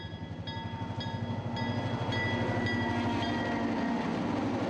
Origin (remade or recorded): recorded